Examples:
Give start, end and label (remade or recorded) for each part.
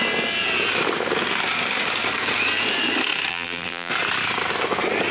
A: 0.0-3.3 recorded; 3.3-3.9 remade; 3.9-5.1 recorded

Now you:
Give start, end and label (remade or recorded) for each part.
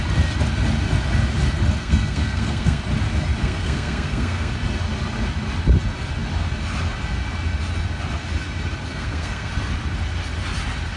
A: 0.0-1.8 recorded; 1.8-2.8 remade; 2.8-3.4 recorded; 3.4-4.5 remade; 4.5-8.9 recorded; 8.9-9.5 remade; 9.5-11.0 recorded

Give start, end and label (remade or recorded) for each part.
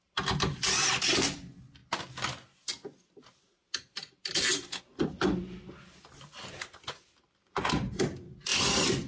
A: 0.0-8.5 recorded; 8.5-9.1 remade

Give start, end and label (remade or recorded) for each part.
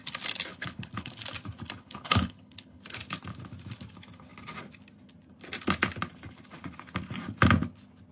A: 0.0-0.5 recorded; 0.5-1.2 remade; 1.2-1.8 recorded; 1.8-2.8 remade; 2.8-8.1 recorded